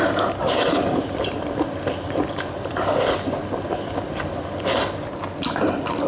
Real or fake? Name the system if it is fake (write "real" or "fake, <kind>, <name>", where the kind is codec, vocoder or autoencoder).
real